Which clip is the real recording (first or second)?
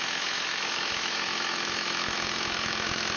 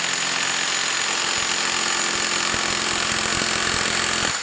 second